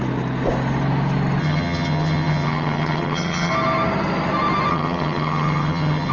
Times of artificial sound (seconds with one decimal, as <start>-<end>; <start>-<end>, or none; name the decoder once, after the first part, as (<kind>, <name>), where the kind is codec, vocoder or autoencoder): 1.4-3.5 (vocoder, HiFi-GAN); 4.7-6.1